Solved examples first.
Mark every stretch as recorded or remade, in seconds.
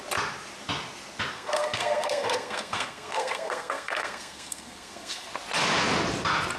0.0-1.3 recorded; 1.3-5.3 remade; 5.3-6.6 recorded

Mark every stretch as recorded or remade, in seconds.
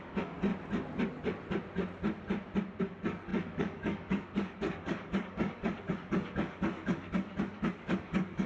0.0-0.5 remade; 0.5-2.8 recorded; 2.8-8.5 remade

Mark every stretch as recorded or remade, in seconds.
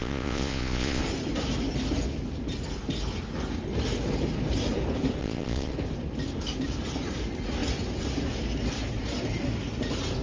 0.0-1.0 remade; 1.0-5.2 recorded; 5.2-5.7 remade; 5.7-10.2 recorded